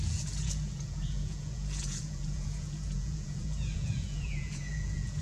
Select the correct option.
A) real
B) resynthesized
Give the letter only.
B